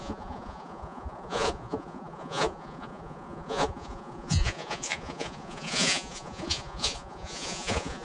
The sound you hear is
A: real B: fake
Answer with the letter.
B